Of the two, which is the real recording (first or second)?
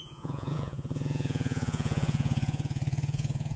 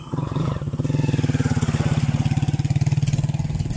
second